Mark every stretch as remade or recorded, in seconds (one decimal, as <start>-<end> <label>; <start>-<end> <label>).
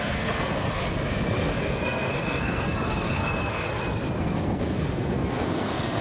0.0-0.8 remade; 0.8-1.3 recorded; 1.3-3.7 remade; 3.7-4.2 recorded; 4.2-6.0 remade